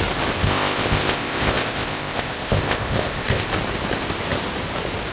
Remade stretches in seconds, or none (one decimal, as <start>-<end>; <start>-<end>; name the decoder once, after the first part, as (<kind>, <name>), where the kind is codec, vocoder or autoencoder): 0.4-3.5 (codec, ZipCodec)